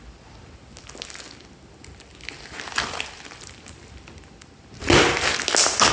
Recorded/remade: recorded